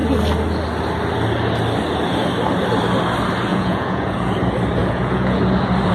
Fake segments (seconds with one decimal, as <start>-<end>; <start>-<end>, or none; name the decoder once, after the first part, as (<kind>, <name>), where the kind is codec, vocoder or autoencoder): 3.5-4.3 (vocoder, Vocos); 4.8-5.4